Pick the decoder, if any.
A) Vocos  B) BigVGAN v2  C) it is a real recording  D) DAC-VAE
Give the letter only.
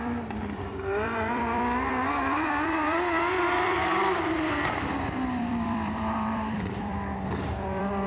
B